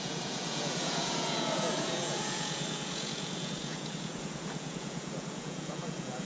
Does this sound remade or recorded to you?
remade